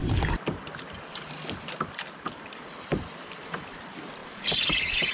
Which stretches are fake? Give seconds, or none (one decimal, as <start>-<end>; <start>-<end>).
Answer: 4.2-5.1